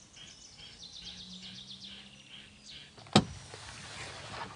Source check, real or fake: real